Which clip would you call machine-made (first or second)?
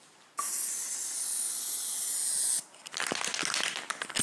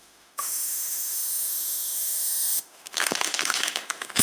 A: second